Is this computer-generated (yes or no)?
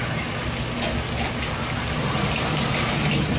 no